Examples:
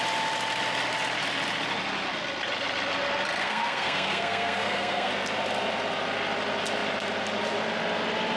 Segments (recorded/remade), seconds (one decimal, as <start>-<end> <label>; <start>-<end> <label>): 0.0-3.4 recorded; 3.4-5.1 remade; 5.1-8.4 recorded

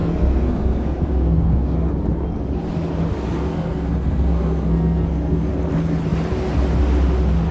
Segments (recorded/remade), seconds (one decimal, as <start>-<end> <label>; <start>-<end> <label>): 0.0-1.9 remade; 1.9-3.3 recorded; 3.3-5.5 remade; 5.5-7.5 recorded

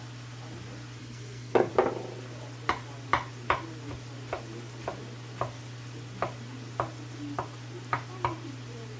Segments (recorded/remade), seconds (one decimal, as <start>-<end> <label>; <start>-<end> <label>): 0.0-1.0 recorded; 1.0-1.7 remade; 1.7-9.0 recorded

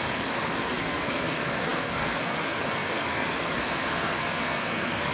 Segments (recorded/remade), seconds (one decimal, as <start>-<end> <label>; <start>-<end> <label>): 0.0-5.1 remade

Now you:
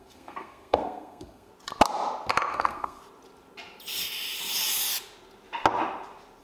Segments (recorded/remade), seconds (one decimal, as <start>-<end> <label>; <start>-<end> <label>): 0.0-1.5 remade; 1.5-2.5 recorded; 2.5-3.0 remade; 3.0-6.4 recorded

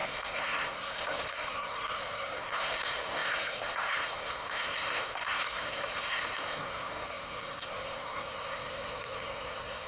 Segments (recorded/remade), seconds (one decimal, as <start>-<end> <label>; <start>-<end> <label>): 0.0-9.9 remade

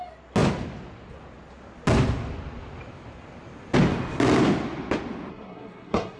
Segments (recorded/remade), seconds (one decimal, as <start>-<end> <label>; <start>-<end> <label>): 0.0-5.3 recorded; 5.3-6.2 remade

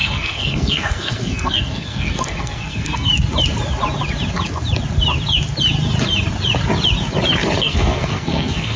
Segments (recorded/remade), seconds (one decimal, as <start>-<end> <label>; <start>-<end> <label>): 0.0-3.1 remade; 3.1-7.6 recorded; 7.6-8.8 remade